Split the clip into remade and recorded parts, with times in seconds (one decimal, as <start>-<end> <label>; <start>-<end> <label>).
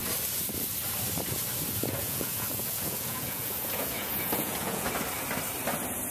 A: 0.0-2.0 recorded; 2.0-4.9 remade; 4.9-6.1 recorded